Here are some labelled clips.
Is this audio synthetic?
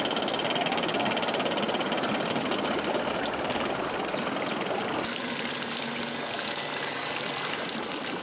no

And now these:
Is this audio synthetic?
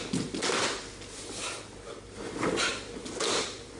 no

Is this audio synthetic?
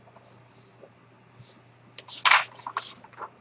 no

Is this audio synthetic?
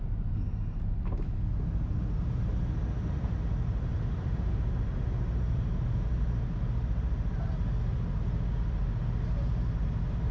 no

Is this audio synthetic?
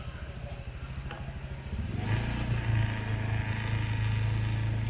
no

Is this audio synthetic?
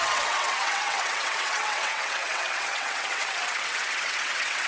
yes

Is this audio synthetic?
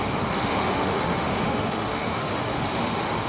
yes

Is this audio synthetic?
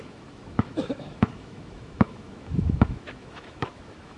yes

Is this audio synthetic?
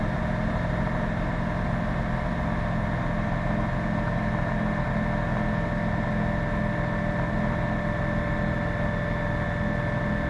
no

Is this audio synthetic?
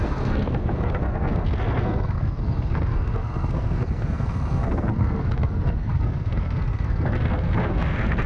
yes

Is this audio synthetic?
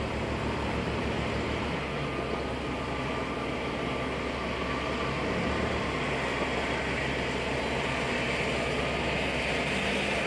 no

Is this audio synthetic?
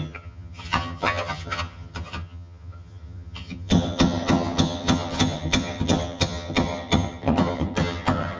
yes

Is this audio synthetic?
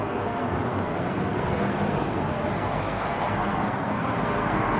yes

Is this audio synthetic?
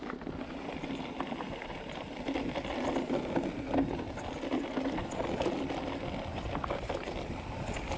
no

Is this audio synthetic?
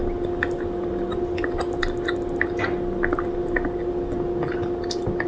no